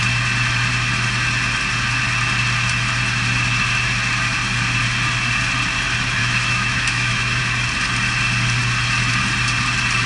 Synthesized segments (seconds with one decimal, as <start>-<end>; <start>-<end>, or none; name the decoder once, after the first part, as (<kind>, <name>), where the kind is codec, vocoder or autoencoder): 6.2-7.4 (autoencoder, DAC-VAE)